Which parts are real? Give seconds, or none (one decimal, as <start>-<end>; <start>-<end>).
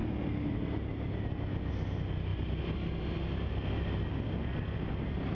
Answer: 0.0-5.3